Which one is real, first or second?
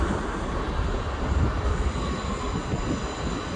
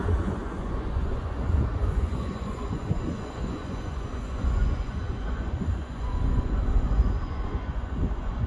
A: first